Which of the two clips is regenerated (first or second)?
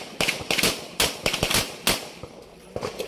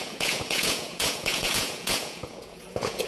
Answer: second